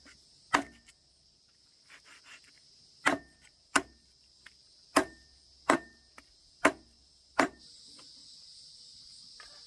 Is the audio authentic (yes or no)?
yes